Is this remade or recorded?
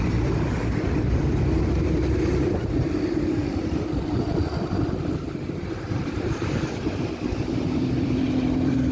remade